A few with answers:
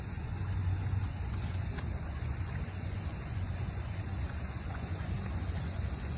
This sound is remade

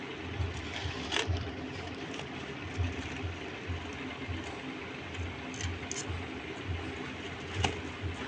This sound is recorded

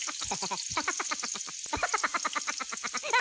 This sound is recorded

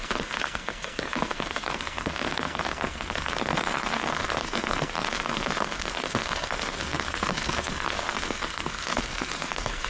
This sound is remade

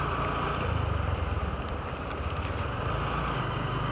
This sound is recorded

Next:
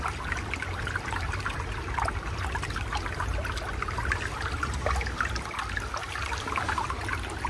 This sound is recorded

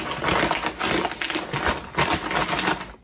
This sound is recorded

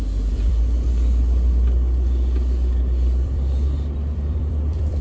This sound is remade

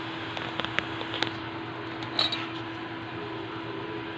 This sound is recorded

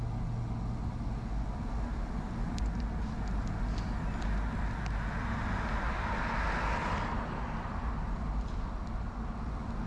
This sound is recorded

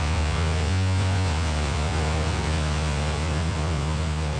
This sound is remade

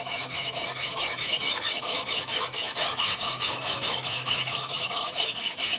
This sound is remade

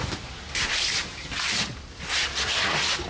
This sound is recorded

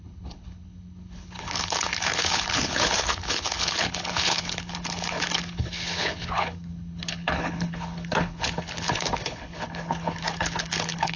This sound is remade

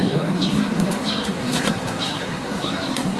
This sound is remade